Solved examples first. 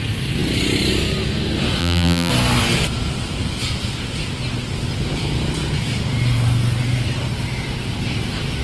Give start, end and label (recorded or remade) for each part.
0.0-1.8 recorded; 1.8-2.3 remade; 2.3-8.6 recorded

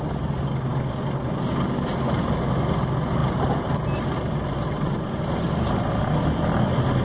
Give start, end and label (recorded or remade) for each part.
0.0-3.2 recorded; 3.2-5.9 remade; 5.9-7.0 recorded

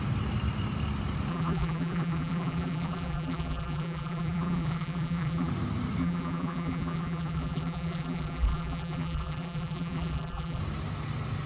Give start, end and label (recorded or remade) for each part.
0.0-1.3 recorded; 1.3-5.5 remade; 5.5-6.0 recorded; 6.0-10.6 remade; 10.6-11.5 recorded

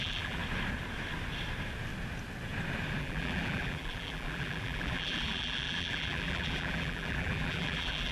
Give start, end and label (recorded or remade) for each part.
0.0-0.4 remade; 0.4-3.0 recorded; 3.0-8.1 remade

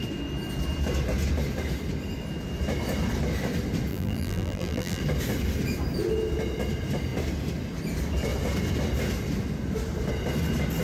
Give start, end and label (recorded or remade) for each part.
0.0-3.9 recorded; 3.9-5.0 remade; 5.0-10.8 recorded

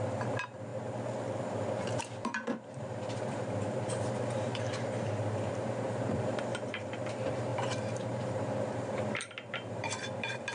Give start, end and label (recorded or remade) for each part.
0.0-0.7 remade; 0.7-1.8 recorded; 1.8-10.5 remade

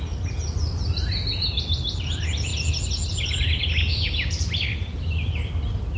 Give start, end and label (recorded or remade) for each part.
0.0-6.0 recorded